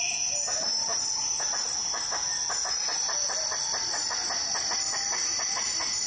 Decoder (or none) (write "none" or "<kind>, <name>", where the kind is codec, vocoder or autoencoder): none